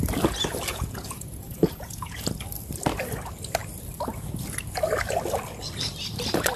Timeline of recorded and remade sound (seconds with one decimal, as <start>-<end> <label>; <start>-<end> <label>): 0.0-0.7 recorded; 0.7-2.2 remade; 2.2-6.6 recorded